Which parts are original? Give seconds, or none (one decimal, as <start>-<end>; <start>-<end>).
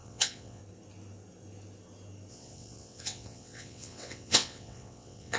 0.6-2.3